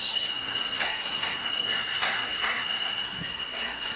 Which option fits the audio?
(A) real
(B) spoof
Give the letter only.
B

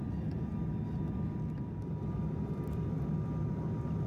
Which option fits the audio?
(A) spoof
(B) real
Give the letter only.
B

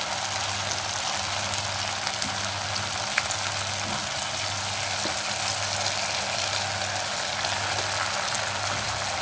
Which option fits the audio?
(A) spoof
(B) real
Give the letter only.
B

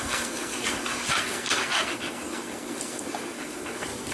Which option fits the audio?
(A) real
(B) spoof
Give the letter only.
B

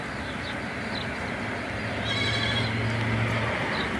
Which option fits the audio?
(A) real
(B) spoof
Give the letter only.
A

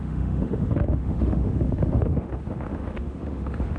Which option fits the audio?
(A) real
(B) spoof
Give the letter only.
B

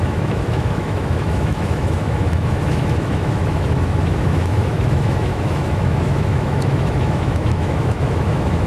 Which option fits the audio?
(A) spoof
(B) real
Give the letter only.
A